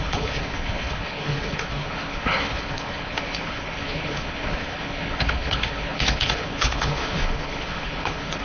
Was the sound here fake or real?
fake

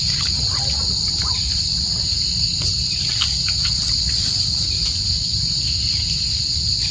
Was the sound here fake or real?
real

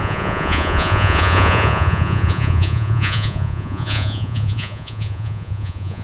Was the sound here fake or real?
fake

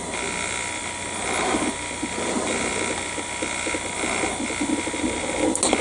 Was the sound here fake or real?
real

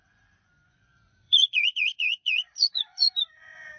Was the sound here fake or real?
fake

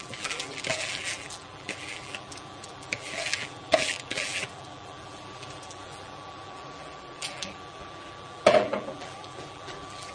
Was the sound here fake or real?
fake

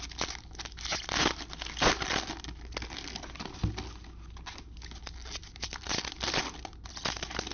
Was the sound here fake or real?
real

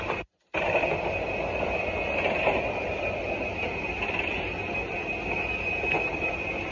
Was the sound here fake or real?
real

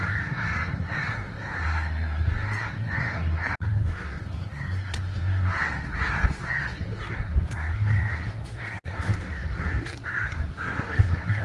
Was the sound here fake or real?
fake